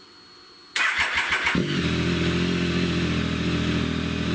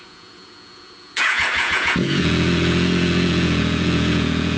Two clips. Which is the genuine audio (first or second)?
first